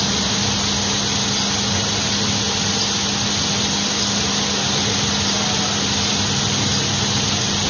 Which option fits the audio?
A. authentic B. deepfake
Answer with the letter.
A